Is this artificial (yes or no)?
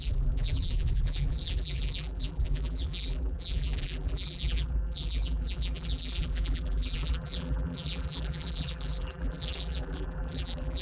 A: yes